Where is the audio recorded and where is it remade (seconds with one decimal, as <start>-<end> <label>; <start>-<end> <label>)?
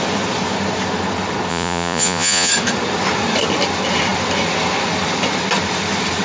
0.0-1.5 recorded; 1.5-2.5 remade; 2.5-6.2 recorded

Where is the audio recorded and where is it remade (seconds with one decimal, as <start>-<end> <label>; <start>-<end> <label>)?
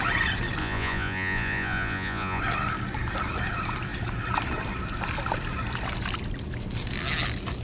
0.0-0.6 recorded; 0.6-2.4 remade; 2.4-7.6 recorded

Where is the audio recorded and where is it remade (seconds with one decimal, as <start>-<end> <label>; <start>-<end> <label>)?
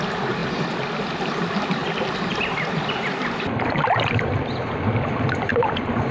0.0-6.1 recorded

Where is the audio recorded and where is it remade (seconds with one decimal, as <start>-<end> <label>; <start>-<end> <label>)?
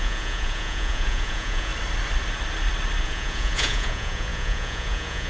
0.0-1.7 remade; 1.7-3.0 recorded; 3.0-5.3 remade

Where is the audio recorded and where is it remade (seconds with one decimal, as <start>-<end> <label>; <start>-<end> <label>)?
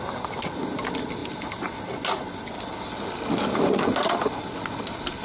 0.0-5.2 recorded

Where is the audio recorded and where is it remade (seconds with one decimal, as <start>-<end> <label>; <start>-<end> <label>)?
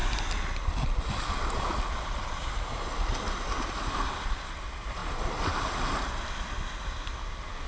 0.0-7.7 recorded